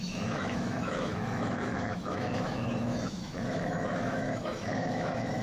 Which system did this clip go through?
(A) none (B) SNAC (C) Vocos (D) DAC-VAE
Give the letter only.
D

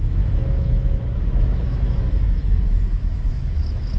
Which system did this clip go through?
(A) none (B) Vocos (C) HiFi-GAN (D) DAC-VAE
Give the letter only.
D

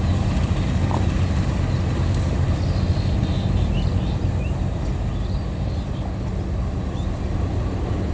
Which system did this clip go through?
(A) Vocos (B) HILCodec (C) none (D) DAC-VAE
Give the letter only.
C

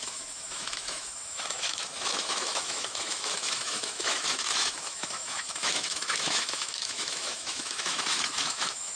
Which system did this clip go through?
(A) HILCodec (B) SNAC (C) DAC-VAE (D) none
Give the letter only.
C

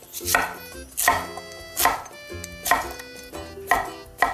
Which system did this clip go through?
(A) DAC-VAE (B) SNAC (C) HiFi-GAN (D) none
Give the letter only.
D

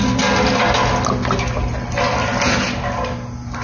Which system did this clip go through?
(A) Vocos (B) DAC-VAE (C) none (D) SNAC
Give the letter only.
C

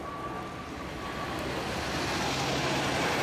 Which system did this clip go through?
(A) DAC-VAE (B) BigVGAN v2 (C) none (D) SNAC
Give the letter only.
C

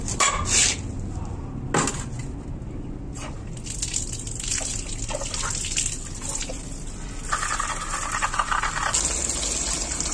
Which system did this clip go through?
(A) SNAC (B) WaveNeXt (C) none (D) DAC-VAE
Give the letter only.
C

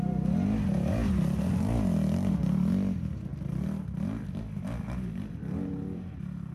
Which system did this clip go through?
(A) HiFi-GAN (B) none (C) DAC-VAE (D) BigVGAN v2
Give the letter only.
B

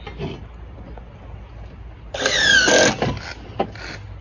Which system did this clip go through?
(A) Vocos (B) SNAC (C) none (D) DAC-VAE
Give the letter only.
C